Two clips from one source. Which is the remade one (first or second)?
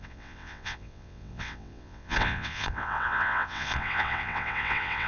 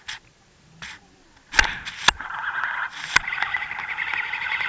first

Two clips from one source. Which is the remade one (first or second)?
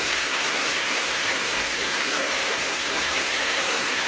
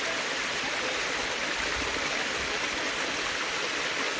first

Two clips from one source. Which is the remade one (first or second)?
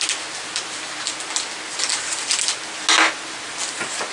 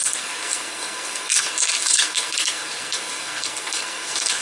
second